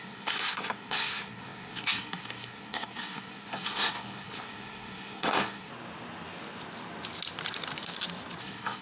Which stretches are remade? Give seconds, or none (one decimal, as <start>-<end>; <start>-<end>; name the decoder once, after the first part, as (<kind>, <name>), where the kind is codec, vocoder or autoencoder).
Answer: 0.0-5.7 (codec, SNAC); 8.4-8.8